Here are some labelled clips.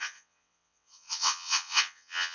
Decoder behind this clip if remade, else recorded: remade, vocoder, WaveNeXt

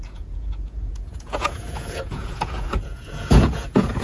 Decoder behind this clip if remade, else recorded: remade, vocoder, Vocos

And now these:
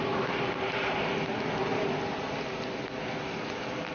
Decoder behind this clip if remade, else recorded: recorded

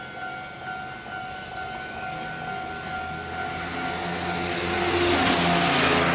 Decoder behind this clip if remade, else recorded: recorded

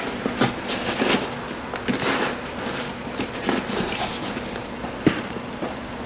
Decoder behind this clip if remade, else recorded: recorded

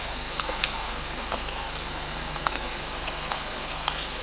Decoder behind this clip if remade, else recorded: remade, codec, SNAC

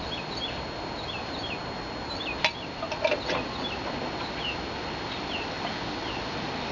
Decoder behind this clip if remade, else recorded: recorded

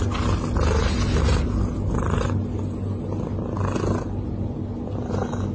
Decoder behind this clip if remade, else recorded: recorded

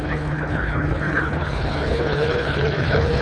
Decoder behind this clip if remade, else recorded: remade, codec, HILCodec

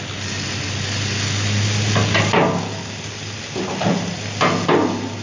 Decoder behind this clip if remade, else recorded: recorded